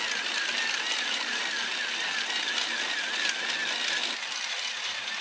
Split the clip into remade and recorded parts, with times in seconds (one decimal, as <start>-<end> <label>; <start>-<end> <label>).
0.0-5.2 recorded